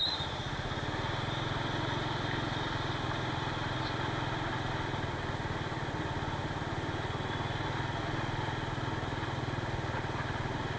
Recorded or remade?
recorded